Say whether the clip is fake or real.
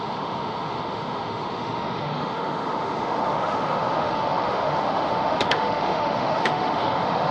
fake